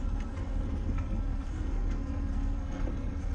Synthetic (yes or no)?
yes